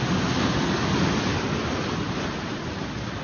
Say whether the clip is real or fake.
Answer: real